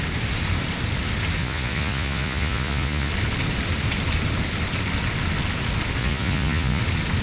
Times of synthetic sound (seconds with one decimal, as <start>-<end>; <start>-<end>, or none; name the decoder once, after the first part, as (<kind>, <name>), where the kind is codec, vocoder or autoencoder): 1.4-3.1 (vocoder, Vocos); 6.0-6.8